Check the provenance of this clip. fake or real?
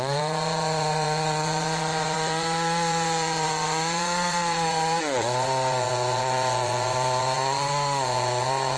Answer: fake